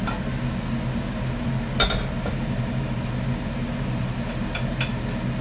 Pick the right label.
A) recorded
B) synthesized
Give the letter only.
A